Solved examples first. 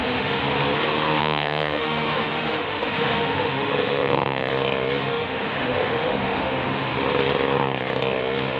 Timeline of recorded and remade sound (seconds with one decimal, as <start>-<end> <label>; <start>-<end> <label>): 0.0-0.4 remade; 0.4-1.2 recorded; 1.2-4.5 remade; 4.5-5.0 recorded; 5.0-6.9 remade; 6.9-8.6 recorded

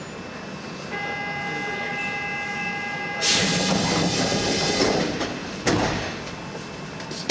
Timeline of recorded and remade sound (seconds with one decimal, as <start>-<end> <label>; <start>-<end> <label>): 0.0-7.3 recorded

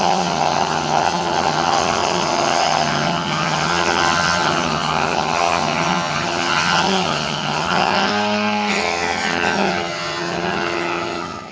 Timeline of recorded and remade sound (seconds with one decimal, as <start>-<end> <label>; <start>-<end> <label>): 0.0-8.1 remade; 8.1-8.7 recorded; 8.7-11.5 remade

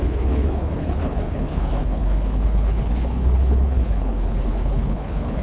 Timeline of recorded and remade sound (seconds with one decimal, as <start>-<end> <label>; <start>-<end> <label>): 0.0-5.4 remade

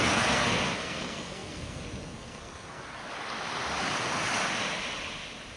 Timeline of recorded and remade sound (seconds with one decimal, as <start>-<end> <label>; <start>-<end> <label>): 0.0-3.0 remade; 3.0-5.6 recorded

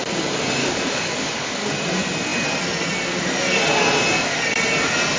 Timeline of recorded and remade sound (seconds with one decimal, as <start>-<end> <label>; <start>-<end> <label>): 0.0-0.6 recorded; 0.6-1.7 remade; 1.7-5.2 recorded